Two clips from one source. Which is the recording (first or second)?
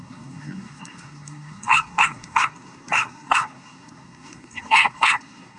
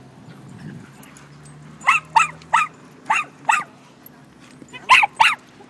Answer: second